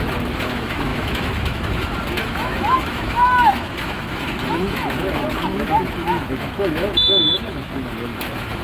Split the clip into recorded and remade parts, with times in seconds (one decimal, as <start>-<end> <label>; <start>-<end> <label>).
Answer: 0.0-8.6 remade